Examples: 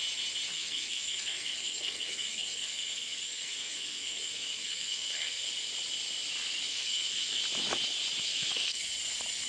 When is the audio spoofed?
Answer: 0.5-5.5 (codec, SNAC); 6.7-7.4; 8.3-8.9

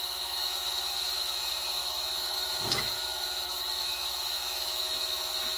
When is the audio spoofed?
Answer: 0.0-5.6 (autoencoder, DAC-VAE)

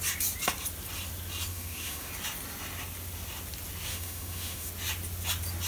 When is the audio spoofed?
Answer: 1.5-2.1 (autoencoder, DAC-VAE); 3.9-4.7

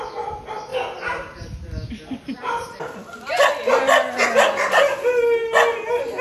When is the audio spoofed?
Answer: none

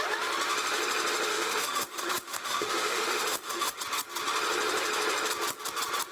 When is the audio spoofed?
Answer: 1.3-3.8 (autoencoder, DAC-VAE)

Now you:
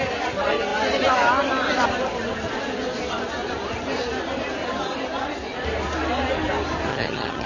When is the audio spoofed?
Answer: 6.9-7.5 (vocoder, HiFi-GAN)

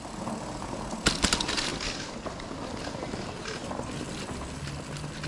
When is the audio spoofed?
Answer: none